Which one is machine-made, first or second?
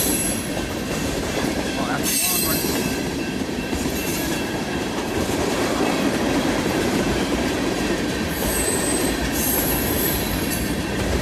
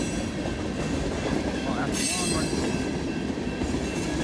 first